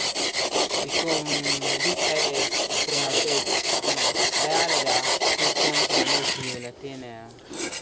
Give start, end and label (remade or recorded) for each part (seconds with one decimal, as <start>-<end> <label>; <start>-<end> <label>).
0.0-2.9 recorded; 2.9-3.9 remade; 3.9-7.8 recorded